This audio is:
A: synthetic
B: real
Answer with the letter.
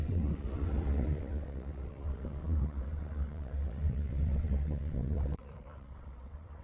A